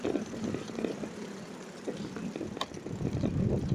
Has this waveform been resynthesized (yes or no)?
no